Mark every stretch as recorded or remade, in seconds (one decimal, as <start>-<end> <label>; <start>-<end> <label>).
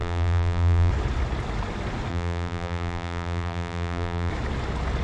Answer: 0.0-0.9 remade; 0.9-2.1 recorded; 2.1-4.3 remade; 4.3-5.0 recorded